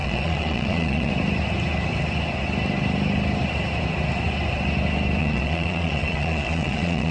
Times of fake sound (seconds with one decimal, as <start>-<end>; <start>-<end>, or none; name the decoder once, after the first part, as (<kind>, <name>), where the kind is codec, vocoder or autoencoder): 0.0-1.1 (vocoder, Vocos); 5.2-7.1